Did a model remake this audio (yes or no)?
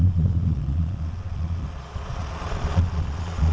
yes